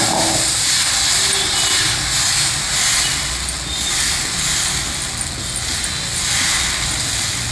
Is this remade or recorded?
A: recorded